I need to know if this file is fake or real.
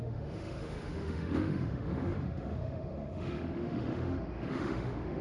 fake